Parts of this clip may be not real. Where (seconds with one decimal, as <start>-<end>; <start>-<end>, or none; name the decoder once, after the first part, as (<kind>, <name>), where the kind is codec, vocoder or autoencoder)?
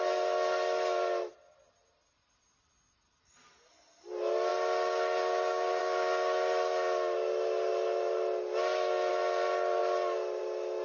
none